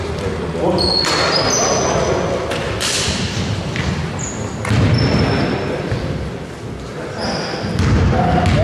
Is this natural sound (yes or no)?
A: yes